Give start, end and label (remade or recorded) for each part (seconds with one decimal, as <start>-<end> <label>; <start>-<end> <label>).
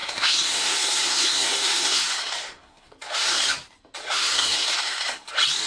0.0-3.4 remade; 3.4-4.0 recorded; 4.0-5.3 remade; 5.3-5.7 recorded